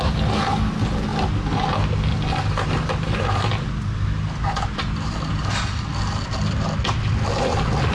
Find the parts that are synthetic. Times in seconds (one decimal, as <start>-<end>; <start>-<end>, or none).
none